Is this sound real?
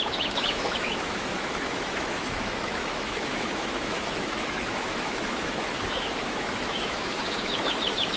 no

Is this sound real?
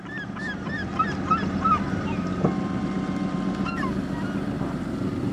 yes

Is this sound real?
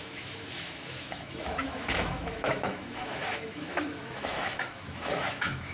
no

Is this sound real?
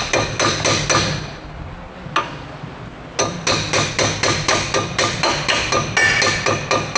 yes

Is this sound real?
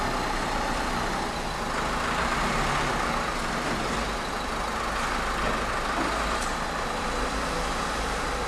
yes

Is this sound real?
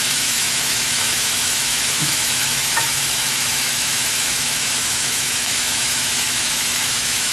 no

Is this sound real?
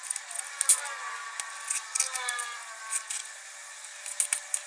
yes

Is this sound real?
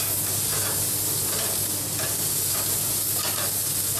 yes